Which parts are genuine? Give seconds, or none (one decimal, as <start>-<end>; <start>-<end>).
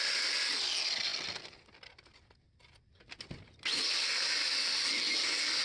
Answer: 0.0-5.6